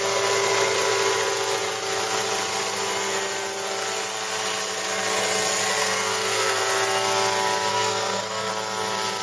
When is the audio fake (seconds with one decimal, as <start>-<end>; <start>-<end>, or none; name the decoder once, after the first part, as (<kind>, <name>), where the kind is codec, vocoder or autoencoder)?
5.8-6.6 (codec, SNAC); 7.7-8.5